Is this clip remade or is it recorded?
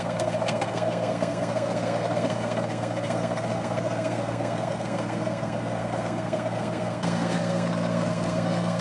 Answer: remade